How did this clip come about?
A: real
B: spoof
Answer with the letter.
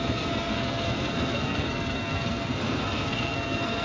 B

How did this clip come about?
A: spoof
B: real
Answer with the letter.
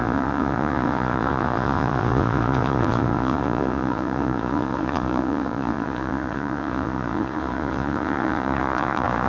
A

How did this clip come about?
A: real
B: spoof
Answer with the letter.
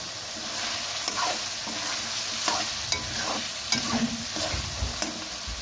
A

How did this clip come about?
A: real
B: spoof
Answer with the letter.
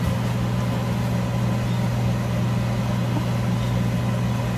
A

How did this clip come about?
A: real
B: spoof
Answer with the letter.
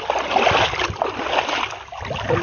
A